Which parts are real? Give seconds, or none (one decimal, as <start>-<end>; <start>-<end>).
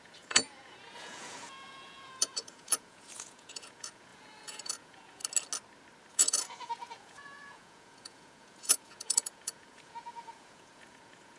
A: 5.2-6.1